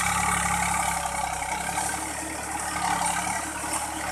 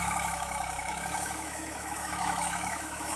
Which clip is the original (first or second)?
first